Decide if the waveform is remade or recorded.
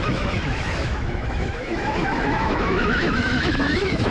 remade